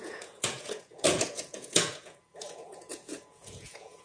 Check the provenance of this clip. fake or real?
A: fake